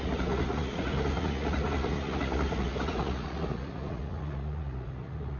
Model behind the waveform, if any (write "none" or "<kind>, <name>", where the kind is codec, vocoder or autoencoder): vocoder, Vocos